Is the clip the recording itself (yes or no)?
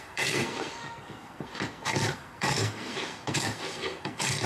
no